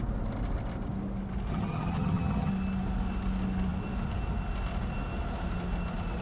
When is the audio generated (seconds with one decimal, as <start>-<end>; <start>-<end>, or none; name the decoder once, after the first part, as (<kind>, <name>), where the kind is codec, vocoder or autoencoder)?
1.5-2.5 (vocoder, HiFi-GAN)